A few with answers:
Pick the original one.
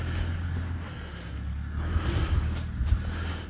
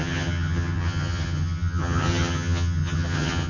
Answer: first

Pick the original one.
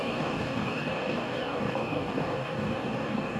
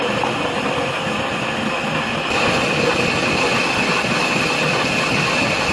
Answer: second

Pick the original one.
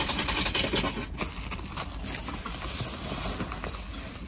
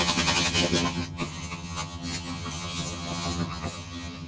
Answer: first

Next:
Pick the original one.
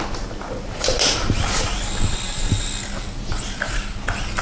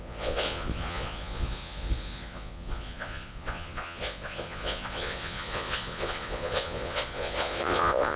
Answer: first